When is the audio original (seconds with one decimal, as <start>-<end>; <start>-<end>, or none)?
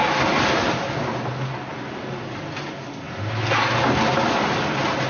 0.0-5.1